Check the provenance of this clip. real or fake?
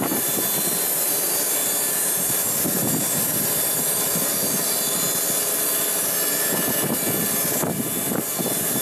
real